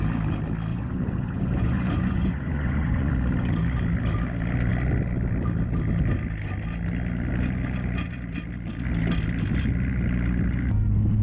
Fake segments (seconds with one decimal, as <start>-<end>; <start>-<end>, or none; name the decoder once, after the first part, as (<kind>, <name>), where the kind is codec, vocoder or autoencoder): 0.7-3.1 (vocoder, Vocos)